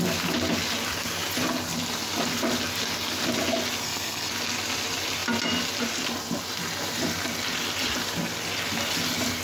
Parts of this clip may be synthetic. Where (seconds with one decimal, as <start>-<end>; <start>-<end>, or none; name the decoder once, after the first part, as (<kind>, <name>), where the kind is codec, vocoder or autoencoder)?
3.8-4.3 (codec, SNAC)